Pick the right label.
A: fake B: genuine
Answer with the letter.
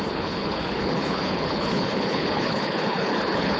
A